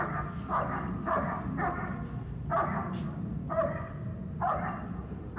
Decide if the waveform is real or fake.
real